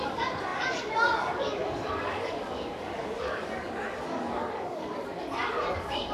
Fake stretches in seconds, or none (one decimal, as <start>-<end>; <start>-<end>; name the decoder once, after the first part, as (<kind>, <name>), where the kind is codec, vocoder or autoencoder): 0.0-6.1 (codec, DAC)

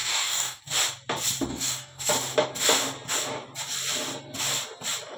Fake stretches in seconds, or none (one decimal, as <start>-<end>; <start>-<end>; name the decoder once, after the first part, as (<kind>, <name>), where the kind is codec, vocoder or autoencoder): 0.0-0.6 (codec, DAC); 1.5-2.1

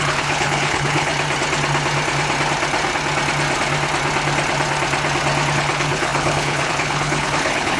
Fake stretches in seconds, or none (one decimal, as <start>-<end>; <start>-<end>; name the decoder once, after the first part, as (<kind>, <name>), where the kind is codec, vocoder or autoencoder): 0.0-1.1 (codec, HILCodec); 5.5-7.8

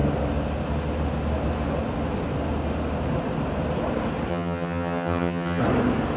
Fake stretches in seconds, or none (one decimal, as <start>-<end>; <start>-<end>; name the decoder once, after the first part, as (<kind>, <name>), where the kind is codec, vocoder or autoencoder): 4.3-5.6 (vocoder, HiFi-GAN)

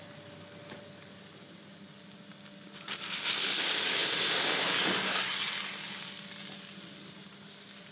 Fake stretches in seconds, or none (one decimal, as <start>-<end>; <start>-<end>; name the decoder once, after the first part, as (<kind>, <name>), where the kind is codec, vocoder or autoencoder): none

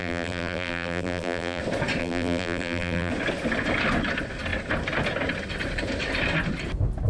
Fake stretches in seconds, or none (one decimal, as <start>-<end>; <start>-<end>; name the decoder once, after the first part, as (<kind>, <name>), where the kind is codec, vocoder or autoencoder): 0.0-1.6 (vocoder, BigVGAN v2); 2.0-3.1

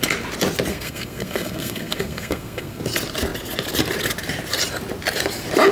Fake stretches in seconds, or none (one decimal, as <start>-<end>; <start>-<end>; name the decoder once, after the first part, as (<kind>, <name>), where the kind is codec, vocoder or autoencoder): 0.7-2.8 (codec, SNAC)